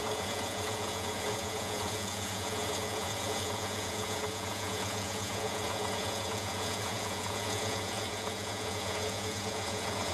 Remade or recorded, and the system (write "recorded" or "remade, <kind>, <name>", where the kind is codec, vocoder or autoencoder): remade, vocoder, Vocos